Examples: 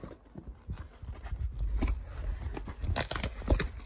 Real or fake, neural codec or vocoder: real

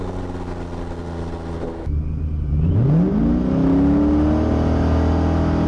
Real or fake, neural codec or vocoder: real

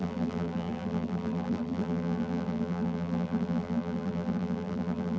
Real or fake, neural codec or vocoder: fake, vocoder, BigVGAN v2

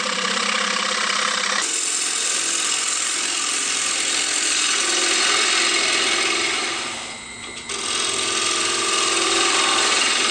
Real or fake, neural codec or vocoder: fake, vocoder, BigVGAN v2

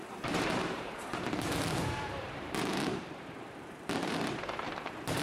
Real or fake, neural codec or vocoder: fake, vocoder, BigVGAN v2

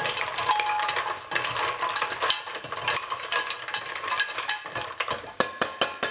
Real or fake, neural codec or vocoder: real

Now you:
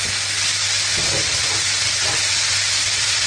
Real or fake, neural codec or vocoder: real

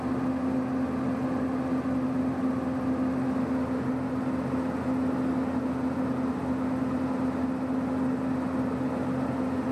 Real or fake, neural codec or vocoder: real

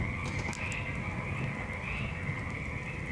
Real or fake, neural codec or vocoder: real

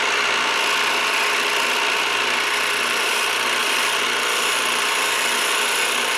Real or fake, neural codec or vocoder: real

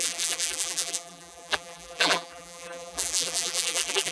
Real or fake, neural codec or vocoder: fake, vocoder, BigVGAN v2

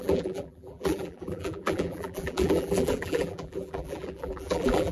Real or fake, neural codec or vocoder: fake, vocoder, BigVGAN v2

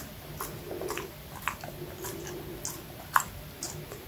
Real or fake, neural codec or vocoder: real